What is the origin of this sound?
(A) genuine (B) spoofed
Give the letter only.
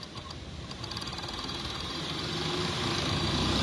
B